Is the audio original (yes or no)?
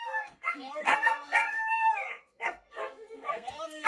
no